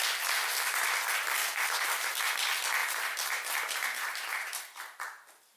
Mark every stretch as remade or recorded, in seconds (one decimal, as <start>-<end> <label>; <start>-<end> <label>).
0.0-1.4 recorded; 1.4-2.2 remade; 2.2-2.8 recorded; 2.8-4.6 remade; 4.6-5.6 recorded